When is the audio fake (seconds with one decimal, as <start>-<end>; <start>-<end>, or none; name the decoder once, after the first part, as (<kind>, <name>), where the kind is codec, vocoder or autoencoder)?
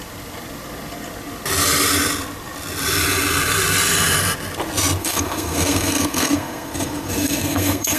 5.0-8.0 (codec, SNAC)